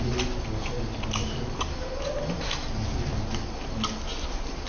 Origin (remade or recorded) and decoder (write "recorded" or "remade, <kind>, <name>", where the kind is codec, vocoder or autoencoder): recorded